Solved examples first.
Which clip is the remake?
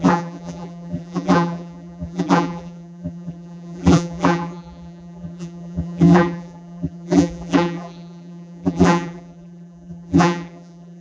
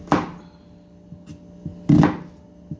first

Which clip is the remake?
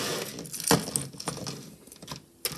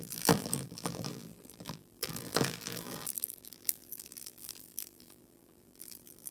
second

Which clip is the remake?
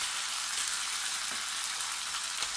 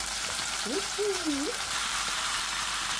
second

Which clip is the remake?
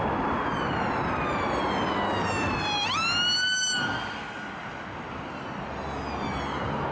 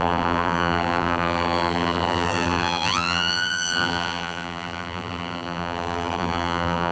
second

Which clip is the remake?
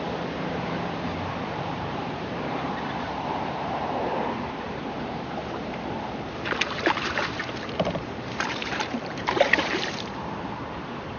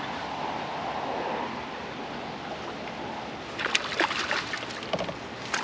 first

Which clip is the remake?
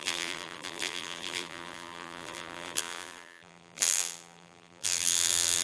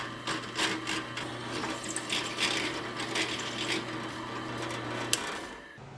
first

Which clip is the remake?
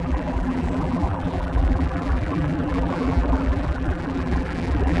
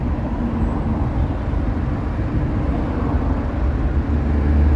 first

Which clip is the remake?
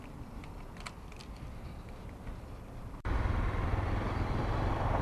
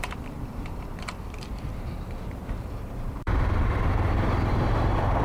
second